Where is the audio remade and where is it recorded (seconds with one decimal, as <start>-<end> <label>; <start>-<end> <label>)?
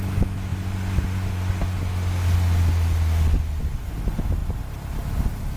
0.0-5.6 recorded